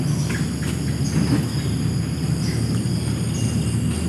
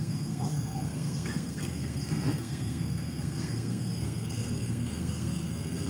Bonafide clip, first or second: first